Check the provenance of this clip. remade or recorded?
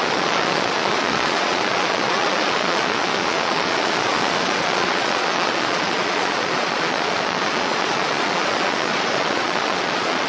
remade